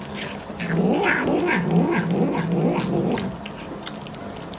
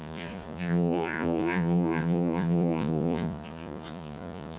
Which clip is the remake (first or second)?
second